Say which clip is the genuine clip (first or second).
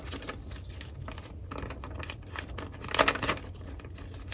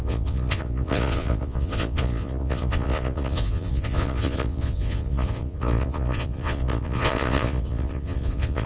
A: first